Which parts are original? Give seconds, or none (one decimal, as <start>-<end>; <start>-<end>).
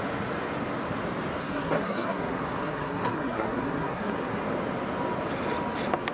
0.0-1.4; 4.4-6.1